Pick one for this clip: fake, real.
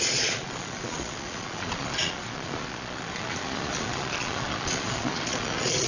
fake